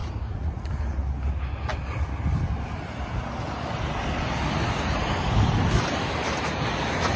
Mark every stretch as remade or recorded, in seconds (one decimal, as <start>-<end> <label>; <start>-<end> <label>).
0.0-0.7 remade; 0.7-7.2 recorded